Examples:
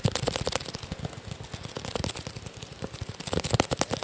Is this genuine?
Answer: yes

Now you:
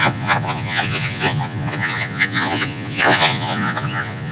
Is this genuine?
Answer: no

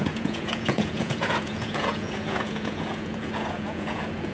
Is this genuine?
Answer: no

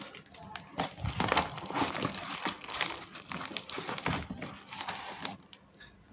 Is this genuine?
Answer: yes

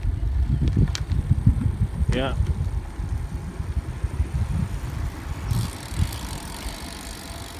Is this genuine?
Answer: yes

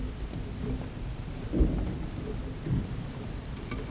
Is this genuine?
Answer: yes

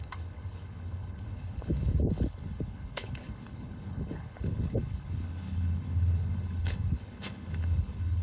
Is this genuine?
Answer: no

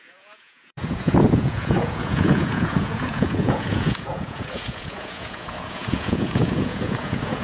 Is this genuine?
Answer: no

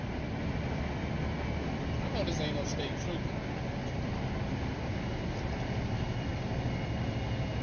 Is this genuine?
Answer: yes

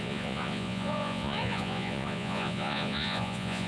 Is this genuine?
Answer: no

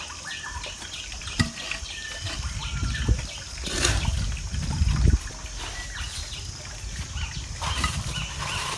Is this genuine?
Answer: yes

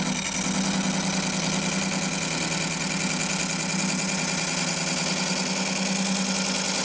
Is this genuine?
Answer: yes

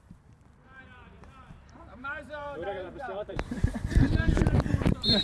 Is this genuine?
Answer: no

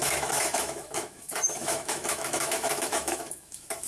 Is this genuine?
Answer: no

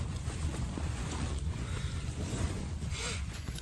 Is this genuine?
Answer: no